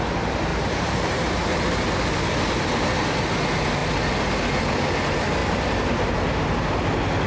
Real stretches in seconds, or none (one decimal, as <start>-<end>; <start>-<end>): 0.0-0.5; 1.5-5.4; 6.4-7.3